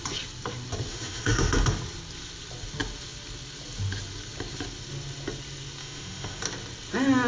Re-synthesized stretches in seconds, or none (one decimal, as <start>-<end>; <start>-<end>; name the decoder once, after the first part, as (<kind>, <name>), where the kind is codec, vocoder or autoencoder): 0.9-1.5 (autoencoder, DAC-VAE); 5.8-6.4